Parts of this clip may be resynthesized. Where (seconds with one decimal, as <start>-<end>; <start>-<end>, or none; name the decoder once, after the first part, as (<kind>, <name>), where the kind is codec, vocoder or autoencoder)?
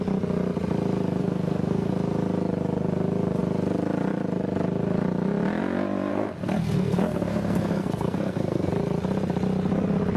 1.2-1.9 (codec, SNAC); 6.1-8.7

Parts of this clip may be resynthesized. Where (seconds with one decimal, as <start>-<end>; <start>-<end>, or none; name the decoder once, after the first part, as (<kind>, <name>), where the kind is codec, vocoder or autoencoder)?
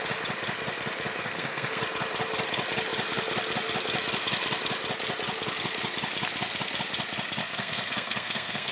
1.2-1.8 (codec, SNAC); 7.4-8.7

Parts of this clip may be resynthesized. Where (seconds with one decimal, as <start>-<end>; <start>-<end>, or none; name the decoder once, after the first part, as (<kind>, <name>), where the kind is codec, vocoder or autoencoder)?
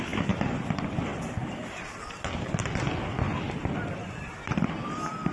none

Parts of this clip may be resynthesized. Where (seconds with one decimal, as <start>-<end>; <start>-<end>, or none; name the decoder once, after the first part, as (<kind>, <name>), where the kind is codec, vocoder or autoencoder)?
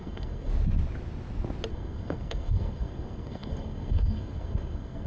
0.0-0.5 (codec, SNAC); 1.7-5.1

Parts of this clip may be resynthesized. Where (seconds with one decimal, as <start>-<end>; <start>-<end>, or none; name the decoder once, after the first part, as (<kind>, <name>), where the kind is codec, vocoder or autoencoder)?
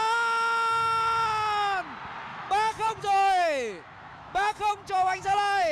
2.3-5.7 (autoencoder, DAC-VAE)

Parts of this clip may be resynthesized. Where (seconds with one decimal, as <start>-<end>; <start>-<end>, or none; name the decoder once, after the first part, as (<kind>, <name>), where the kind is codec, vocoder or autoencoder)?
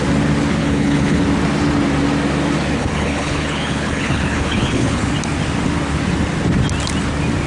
0.6-1.2 (codec, HILCodec); 2.8-5.1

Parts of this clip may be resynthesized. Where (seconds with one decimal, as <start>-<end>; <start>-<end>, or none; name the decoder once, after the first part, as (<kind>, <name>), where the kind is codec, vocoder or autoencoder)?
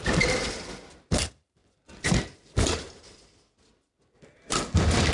0.0-0.4 (vocoder, BigVGAN v2); 1.0-1.6